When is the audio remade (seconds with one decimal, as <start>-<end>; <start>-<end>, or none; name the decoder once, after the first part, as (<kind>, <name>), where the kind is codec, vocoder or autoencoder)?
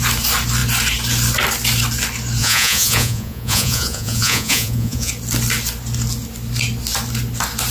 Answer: 2.4-5.1 (vocoder, Vocos)